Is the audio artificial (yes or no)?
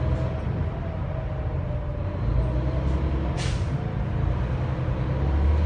no